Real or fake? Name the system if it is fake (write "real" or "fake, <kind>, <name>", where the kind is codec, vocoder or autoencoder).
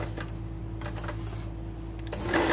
real